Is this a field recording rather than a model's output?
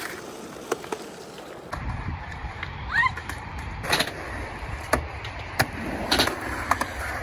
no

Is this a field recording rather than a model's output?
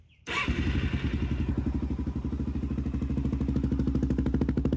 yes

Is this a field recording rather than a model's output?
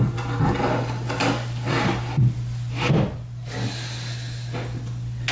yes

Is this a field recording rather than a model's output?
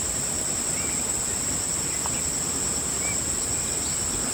yes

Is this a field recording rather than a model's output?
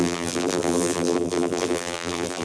no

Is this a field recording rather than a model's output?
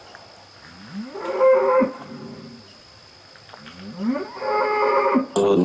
yes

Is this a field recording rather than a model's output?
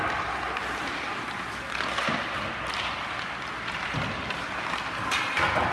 yes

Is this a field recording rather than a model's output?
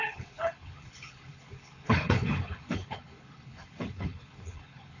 no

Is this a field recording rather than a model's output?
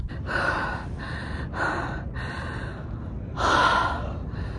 yes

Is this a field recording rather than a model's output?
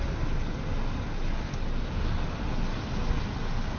yes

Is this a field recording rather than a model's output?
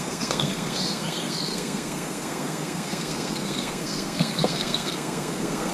no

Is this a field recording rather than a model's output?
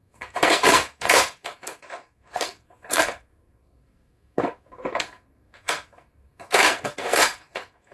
no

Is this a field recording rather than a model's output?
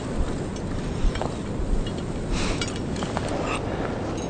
yes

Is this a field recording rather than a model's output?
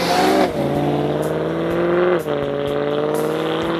yes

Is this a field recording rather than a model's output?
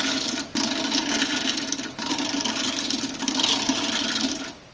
yes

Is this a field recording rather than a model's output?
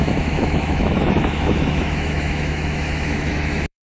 no